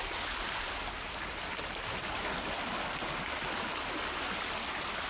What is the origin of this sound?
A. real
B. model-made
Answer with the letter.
A